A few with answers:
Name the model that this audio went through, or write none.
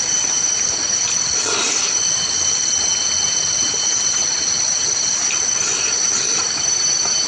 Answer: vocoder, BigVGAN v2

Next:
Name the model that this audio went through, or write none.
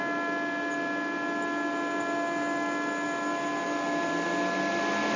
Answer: none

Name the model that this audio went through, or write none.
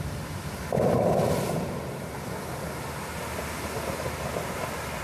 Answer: none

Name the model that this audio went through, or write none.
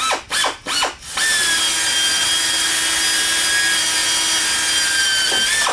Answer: none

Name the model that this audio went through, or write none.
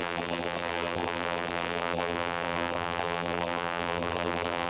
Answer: vocoder, BigVGAN v2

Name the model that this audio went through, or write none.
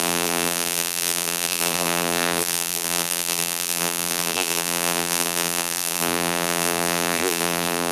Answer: vocoder, BigVGAN v2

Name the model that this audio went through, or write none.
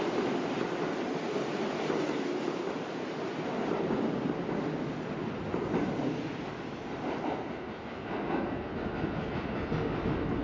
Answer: none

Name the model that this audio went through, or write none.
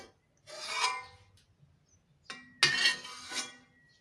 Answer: none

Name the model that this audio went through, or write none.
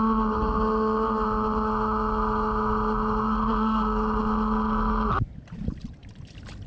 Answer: none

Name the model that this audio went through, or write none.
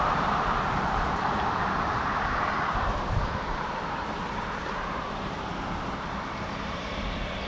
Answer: vocoder, BigVGAN v2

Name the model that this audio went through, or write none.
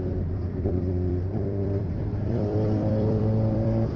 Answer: vocoder, BigVGAN v2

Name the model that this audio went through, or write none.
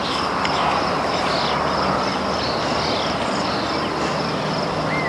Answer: none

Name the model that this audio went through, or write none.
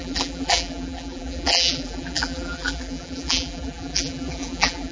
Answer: vocoder, BigVGAN v2